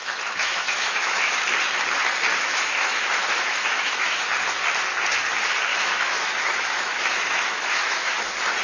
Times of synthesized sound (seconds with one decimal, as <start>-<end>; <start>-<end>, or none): 0.0-1.4; 2.3-4.2; 5.7-8.2